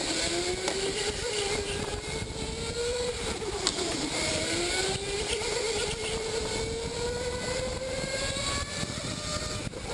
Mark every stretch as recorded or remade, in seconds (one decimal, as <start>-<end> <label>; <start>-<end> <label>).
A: 0.0-2.7 recorded; 2.7-4.7 remade; 4.7-7.7 recorded; 7.7-9.4 remade; 9.4-9.9 recorded